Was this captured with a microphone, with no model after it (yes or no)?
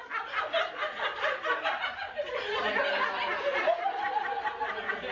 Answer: yes